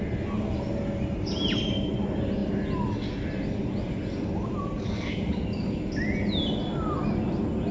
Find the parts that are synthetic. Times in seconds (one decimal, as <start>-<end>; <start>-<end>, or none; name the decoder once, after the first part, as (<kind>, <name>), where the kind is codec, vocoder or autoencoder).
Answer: none